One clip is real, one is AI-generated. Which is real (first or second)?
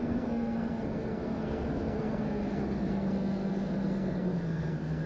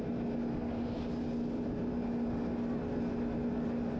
second